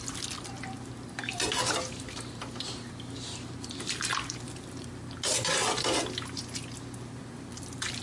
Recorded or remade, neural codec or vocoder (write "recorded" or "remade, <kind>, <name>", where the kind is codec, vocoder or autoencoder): recorded